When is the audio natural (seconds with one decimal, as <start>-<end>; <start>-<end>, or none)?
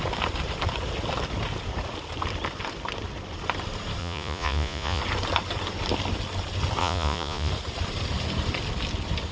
0.0-4.0; 5.0-6.8; 7.5-9.3